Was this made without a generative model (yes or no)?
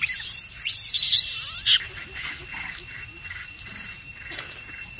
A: yes